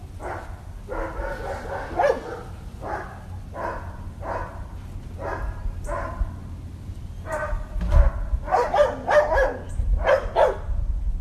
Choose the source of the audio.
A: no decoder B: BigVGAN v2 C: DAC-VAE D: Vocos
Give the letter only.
A